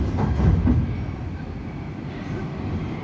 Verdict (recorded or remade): recorded